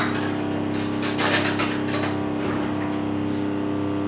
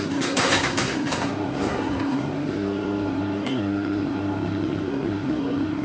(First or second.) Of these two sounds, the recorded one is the first